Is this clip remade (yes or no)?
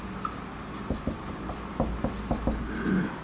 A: no